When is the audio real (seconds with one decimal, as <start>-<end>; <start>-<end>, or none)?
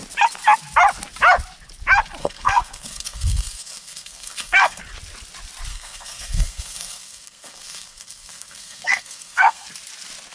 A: 0.0-2.2; 4.8-5.7; 9.7-10.3